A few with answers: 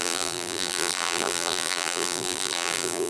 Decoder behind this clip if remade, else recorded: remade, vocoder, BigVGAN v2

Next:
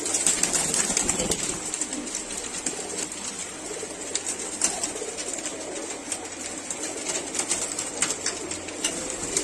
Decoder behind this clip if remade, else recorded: recorded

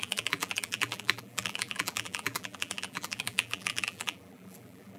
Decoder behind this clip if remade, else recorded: remade, vocoder, BigVGAN v2